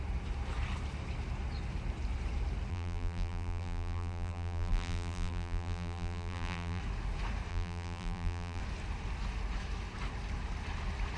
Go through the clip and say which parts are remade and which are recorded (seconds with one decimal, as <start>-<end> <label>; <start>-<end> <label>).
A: 0.0-2.7 recorded; 2.7-6.8 remade; 6.8-7.5 recorded; 7.5-8.6 remade; 8.6-11.2 recorded